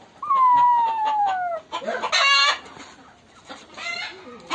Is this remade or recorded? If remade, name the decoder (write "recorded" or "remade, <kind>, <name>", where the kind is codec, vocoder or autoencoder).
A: recorded